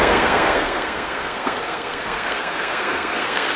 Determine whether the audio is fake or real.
fake